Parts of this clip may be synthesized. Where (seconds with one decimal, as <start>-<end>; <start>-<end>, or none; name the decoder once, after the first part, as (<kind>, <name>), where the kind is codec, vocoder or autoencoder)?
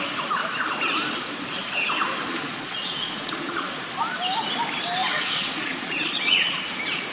2.3-3.8 (vocoder, Vocos); 5.0-6.5